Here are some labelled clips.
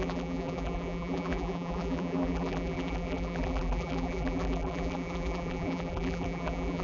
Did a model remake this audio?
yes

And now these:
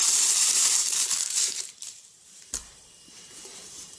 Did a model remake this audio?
yes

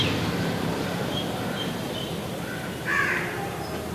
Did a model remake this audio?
no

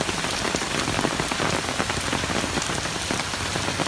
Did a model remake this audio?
no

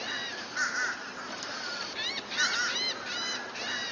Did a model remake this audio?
yes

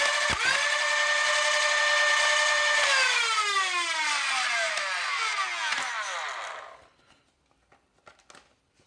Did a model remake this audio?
no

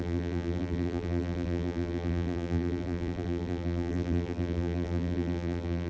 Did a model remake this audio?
yes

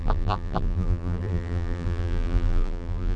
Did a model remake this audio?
yes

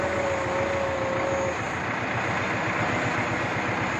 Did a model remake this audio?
no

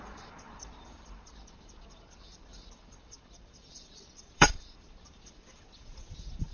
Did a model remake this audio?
yes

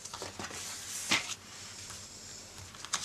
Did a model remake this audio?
no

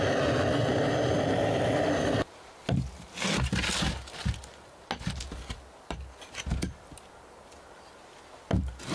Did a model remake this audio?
no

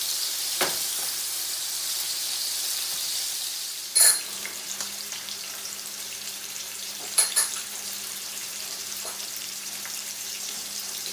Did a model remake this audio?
yes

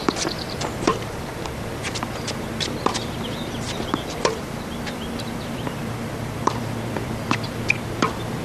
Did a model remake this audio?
yes